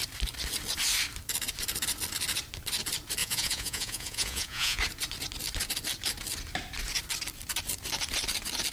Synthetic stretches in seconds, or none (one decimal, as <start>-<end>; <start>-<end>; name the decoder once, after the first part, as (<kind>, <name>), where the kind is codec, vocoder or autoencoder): 3.2-4.8 (vocoder, Vocos)